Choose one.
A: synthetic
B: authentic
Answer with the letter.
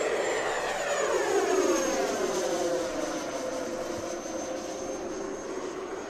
B